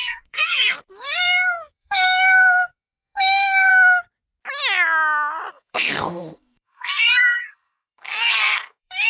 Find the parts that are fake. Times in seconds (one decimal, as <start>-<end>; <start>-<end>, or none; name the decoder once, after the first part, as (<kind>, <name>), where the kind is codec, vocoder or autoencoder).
0.0-3.7 (codec, SNAC); 5.5-9.1

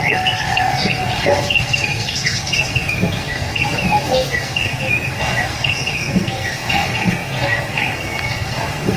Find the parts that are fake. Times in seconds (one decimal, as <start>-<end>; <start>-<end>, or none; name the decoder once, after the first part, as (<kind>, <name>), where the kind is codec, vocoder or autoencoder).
0.0-9.0 (codec, SNAC)

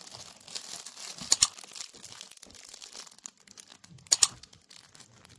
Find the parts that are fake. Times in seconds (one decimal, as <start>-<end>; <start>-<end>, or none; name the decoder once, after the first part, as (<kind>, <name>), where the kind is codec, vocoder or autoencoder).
none

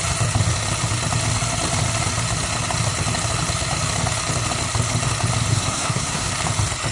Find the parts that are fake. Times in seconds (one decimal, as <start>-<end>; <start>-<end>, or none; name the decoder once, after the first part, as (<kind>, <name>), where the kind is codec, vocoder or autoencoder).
5.5-6.3 (codec, SNAC)

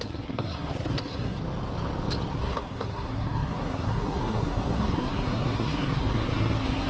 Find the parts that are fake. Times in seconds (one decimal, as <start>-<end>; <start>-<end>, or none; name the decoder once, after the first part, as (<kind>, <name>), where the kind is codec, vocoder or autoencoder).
0.0-1.4 (codec, SNAC); 2.3-6.9

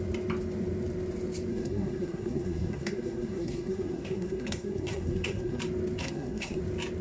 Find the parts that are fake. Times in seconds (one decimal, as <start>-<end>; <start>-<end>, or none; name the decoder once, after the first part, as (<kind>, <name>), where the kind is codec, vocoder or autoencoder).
1.5-5.6 (codec, SNAC); 6.0-6.6